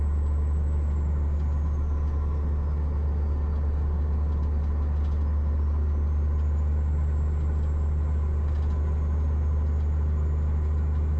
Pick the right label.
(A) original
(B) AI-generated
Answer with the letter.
A